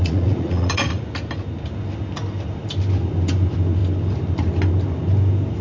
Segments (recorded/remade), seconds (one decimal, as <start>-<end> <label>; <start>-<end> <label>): 0.0-1.0 remade; 1.0-5.6 recorded